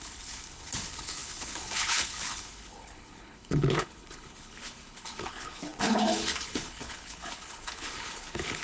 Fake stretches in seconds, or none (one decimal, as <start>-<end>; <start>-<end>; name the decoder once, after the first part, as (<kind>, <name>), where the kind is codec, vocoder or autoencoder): 0.0-8.6 (codec, HILCodec)